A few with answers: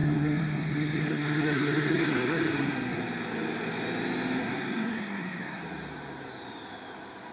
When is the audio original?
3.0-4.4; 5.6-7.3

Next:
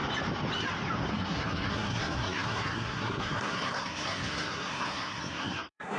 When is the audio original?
0.0-1.1

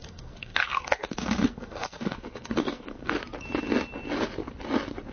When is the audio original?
3.1-5.1

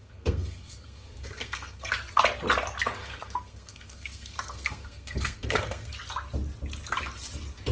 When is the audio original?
1.9-3.0; 5.9-7.7

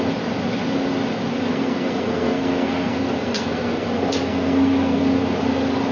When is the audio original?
0.0-1.5; 5.0-5.9

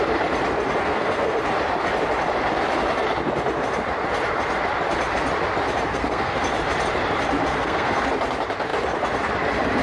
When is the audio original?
0.0-0.8; 1.4-5.9; 6.4-7.5; 8.0-9.8

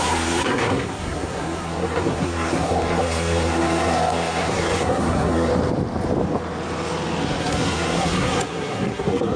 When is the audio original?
5.5-7.4

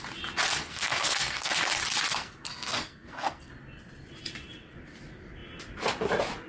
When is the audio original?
0.0-0.6; 1.5-2.1; 3.5-6.5